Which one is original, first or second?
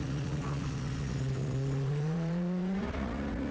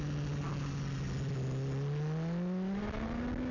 second